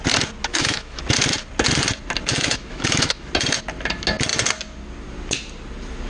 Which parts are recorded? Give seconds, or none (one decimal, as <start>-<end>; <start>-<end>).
0.0-0.4; 1.0-2.3; 3.3-6.1